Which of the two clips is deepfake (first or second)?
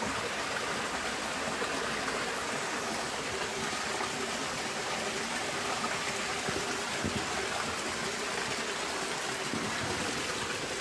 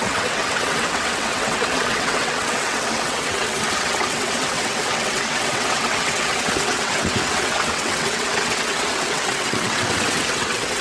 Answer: second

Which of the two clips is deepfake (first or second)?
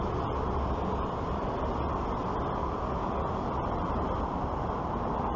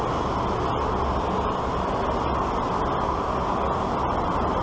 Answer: first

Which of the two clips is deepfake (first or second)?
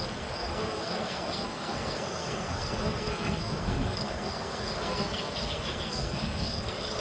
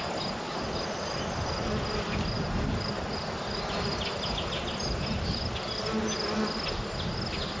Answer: first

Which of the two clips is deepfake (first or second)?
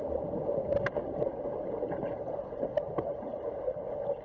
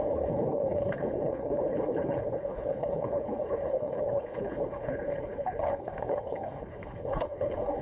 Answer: second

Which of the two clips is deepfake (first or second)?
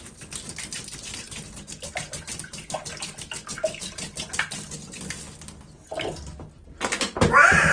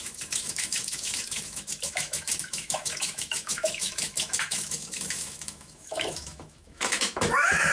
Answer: second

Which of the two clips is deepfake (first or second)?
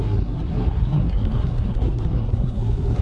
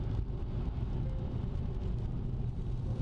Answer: first